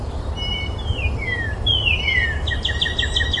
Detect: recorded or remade recorded